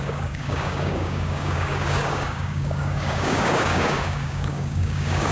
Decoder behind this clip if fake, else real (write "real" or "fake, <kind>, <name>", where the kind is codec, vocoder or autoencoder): fake, codec, DAC